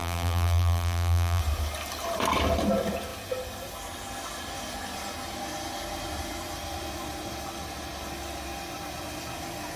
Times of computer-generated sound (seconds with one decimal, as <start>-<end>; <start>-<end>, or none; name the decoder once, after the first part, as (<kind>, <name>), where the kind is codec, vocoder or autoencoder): 0.0-1.4 (vocoder, BigVGAN v2)